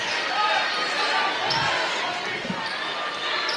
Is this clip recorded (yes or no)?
yes